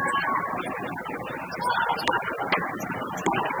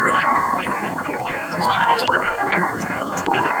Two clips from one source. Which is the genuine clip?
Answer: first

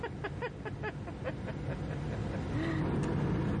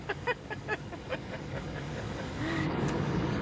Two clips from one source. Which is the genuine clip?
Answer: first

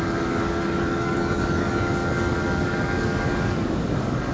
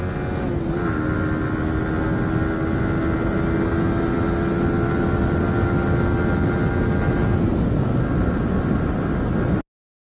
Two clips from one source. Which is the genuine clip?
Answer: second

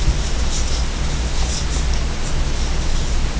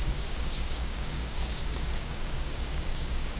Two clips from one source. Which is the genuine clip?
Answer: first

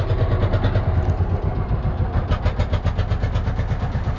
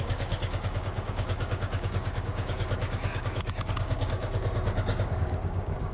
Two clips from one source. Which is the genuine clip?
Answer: first